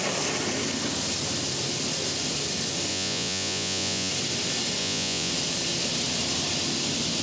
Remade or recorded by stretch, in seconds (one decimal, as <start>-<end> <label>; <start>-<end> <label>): 0.0-2.9 recorded; 2.9-4.1 remade; 4.1-4.8 recorded; 4.8-5.3 remade; 5.3-7.2 recorded

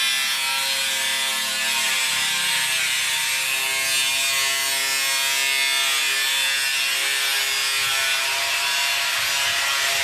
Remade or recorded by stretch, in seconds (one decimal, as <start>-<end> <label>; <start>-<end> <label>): 0.0-10.0 recorded

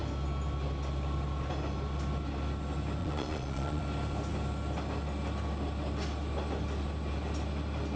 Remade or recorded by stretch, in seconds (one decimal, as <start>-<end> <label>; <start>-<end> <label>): 0.0-3.0 recorded; 3.0-3.8 remade; 3.8-8.0 recorded

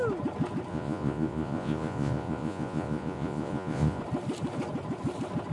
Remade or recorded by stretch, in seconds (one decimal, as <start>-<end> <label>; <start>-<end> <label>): 0.0-0.7 recorded; 0.7-4.0 remade; 4.0-5.5 recorded

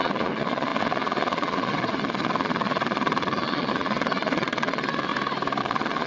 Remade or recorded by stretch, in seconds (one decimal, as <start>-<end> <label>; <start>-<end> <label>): 0.0-5.1 remade; 5.1-5.6 recorded; 5.6-6.1 remade

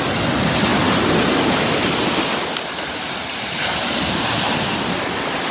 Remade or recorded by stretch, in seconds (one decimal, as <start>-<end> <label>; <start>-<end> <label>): 0.0-5.5 recorded

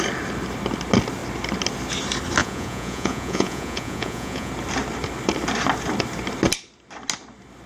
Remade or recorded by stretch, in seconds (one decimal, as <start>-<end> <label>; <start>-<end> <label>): 0.0-2.4 recorded; 2.4-4.5 remade; 4.5-7.7 recorded

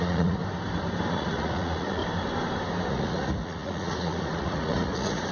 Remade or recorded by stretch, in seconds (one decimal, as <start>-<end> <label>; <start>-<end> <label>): 0.0-0.4 remade; 0.4-1.1 recorded; 1.1-2.0 remade; 2.0-2.9 recorded; 2.9-5.3 remade